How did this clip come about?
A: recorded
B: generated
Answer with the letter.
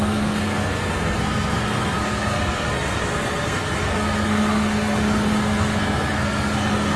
B